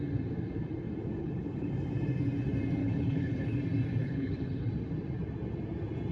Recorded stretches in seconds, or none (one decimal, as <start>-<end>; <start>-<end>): 0.0-1.2; 1.7-2.8; 3.6-4.0; 4.7-6.1